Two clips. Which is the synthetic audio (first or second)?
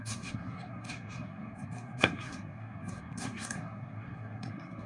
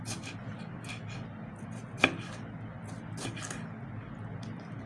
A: first